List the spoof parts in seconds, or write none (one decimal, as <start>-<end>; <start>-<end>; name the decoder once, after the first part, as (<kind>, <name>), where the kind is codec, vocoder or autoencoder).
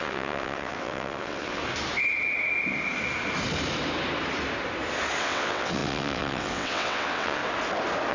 0.0-1.6 (vocoder, WaveNeXt); 5.2-7.4